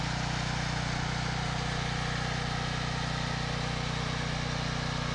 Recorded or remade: recorded